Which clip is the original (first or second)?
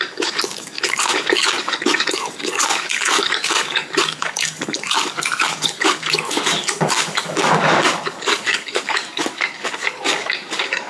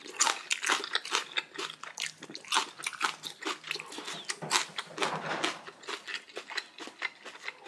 second